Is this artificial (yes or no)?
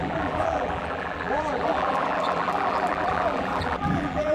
yes